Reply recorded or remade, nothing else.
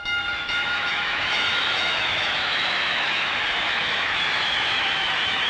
remade